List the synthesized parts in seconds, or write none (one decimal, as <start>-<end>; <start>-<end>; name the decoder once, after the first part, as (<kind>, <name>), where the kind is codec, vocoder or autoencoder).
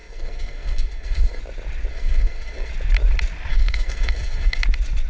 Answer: 0.0-1.4 (codec, SNAC); 1.9-2.7; 3.5-4.6